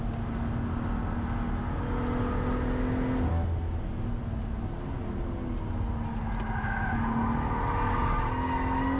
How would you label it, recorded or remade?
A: recorded